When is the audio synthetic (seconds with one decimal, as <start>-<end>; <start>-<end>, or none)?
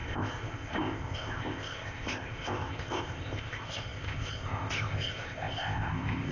0.0-6.3